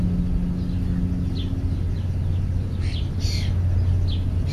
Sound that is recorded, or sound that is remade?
recorded